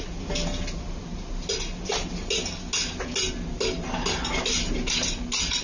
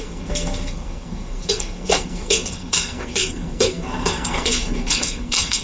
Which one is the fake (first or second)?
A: second